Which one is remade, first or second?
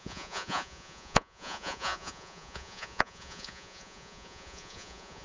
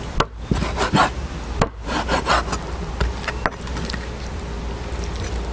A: first